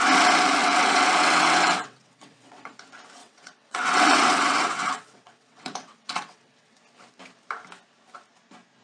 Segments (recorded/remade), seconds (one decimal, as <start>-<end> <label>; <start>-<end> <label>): 0.0-0.6 recorded; 0.6-2.7 remade; 2.7-3.2 recorded; 3.2-6.8 remade; 6.8-8.8 recorded